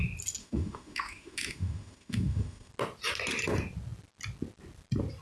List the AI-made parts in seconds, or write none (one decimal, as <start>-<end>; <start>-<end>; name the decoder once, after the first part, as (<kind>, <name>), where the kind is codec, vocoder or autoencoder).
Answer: 0.4-2.7 (autoencoder, DAC-VAE)